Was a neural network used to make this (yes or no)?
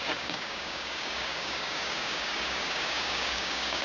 yes